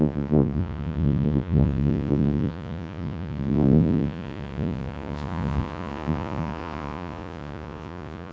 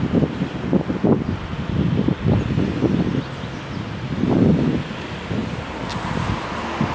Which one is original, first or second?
second